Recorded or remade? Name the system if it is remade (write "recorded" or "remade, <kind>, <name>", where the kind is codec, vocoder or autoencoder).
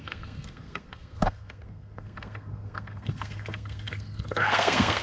remade, codec, SNAC